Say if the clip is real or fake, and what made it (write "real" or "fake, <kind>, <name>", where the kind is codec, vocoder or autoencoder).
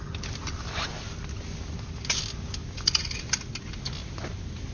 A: real